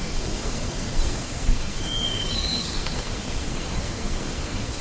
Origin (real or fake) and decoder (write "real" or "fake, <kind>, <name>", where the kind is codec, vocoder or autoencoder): fake, codec, SNAC